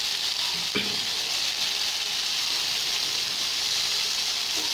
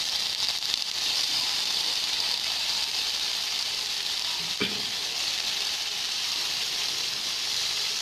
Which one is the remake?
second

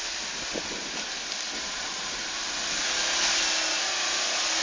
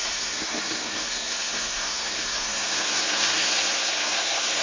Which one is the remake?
second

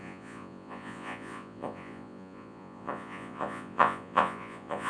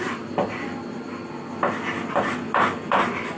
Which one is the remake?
first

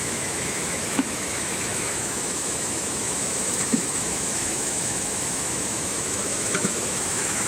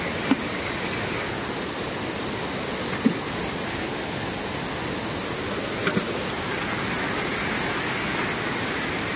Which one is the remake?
first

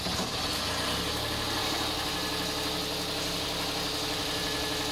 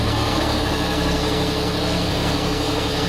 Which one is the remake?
second